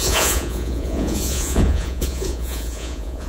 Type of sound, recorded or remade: remade